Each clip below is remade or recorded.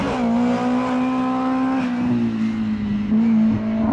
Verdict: recorded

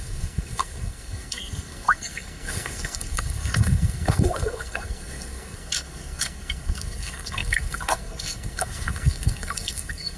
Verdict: remade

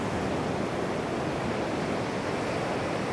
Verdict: recorded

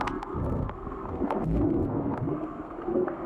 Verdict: remade